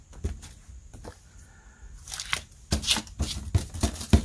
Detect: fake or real real